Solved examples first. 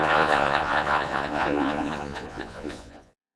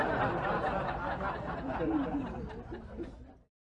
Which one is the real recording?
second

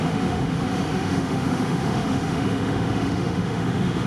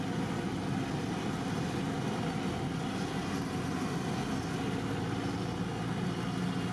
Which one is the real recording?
second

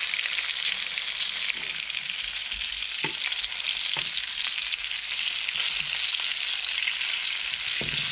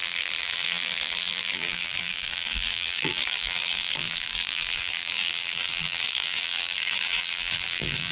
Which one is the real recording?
first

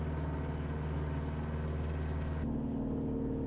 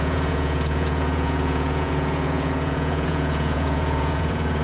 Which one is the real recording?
first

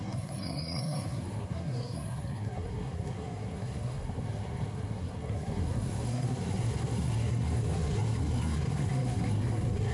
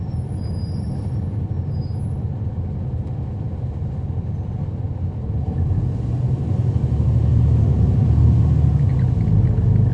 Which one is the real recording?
second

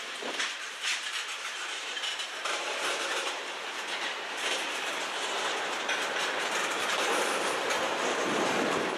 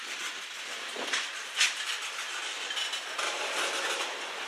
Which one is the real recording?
second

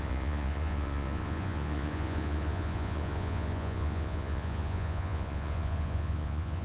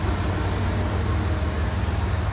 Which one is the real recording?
second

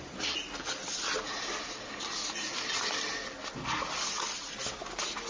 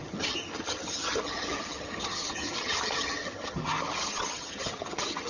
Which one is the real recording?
first